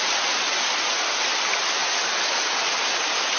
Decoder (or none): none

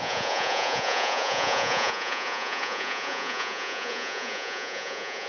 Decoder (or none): vocoder, Vocos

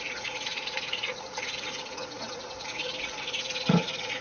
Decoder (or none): vocoder, Vocos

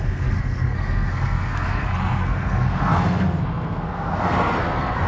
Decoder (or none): codec, SNAC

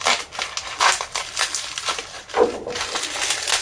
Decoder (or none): none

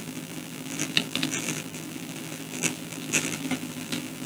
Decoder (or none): vocoder, BigVGAN v2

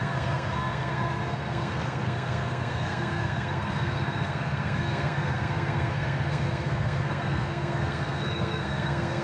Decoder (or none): codec, SNAC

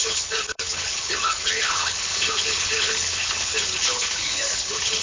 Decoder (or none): codec, HILCodec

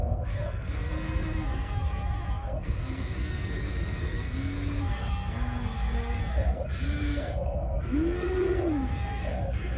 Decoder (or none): codec, SNAC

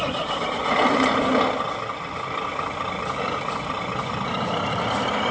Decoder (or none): none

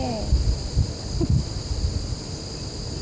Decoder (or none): none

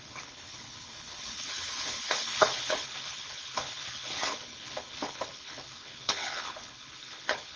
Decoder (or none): codec, HILCodec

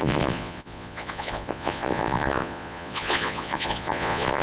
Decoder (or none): vocoder, Vocos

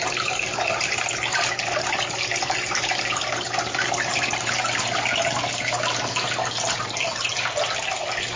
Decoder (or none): none